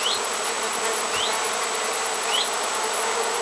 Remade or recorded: recorded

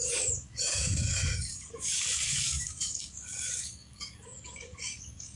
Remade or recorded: remade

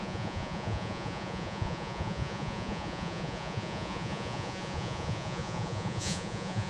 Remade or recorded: remade